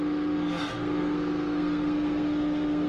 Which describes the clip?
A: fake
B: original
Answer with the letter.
A